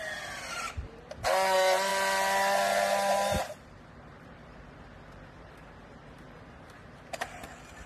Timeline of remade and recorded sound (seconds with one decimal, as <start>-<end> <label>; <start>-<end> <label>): 0.0-7.9 recorded